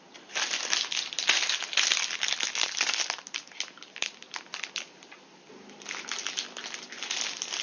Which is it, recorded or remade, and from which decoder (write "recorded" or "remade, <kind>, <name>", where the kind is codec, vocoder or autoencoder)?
recorded